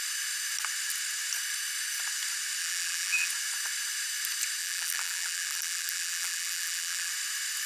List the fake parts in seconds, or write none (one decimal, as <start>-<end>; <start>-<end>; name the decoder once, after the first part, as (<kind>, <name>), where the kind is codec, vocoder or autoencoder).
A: 2.6-3.3 (vocoder, BigVGAN v2); 4.6-7.1